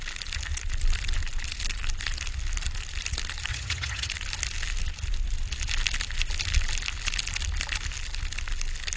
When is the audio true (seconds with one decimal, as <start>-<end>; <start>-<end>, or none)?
0.0-3.5; 4.1-9.0

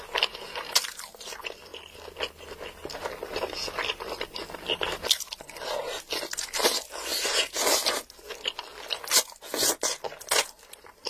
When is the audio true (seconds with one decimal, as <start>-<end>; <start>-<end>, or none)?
0.0-11.1

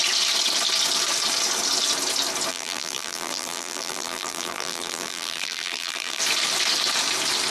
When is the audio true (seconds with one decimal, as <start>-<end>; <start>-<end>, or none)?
0.0-2.5; 6.2-7.5

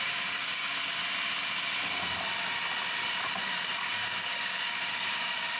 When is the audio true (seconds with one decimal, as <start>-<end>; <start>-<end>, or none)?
1.0-3.4